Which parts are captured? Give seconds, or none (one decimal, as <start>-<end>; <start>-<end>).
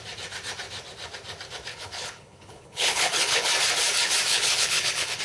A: 0.0-1.7; 3.5-4.3